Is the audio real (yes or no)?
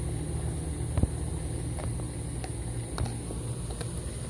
yes